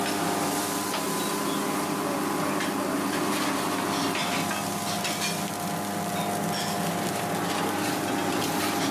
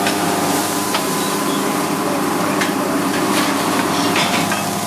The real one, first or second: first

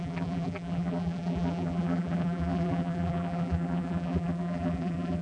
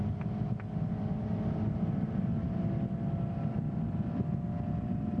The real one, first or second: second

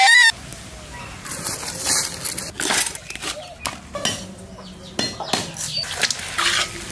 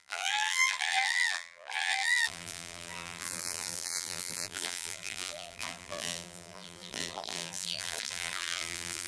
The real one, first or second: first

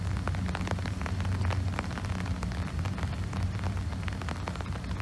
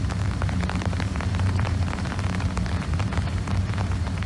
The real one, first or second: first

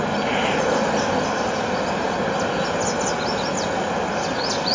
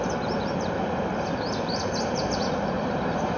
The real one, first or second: first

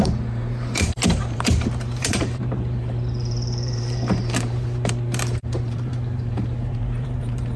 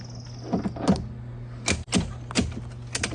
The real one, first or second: second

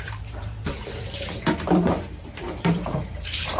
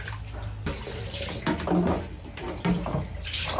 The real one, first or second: second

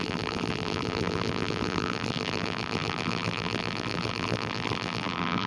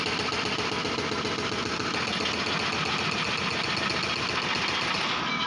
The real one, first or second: second